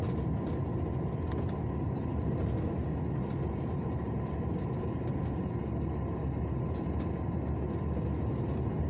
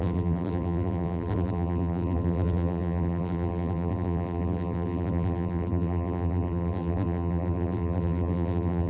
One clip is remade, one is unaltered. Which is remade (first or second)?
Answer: second